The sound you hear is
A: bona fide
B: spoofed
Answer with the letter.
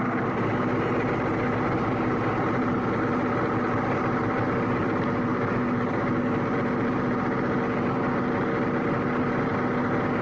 A